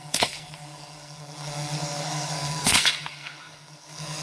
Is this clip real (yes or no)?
no